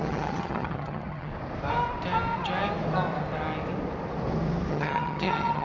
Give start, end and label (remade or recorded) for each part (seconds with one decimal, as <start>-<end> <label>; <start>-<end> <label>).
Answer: 0.0-1.3 remade; 1.3-4.7 recorded; 4.7-5.6 remade